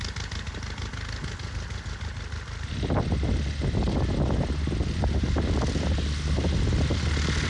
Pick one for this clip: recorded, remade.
recorded